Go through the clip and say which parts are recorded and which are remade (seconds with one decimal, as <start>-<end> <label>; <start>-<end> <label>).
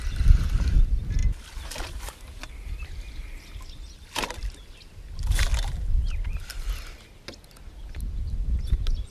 0.0-5.5 recorded; 5.5-6.1 remade; 6.1-9.1 recorded